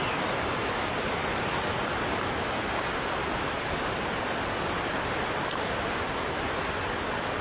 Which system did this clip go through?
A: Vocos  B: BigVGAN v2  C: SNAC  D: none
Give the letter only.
D